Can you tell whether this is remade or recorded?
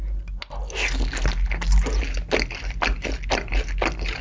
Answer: recorded